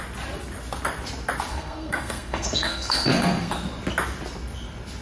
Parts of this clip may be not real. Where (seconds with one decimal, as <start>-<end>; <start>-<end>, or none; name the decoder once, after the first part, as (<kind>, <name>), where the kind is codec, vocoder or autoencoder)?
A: 1.5-3.5 (codec, SNAC)